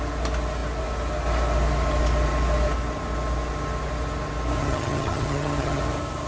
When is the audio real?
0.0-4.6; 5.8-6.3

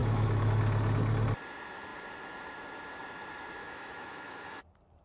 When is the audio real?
0.6-3.6; 4.6-5.0

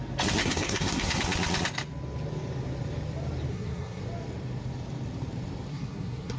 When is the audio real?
0.0-0.4; 1.2-3.5; 4.0-5.7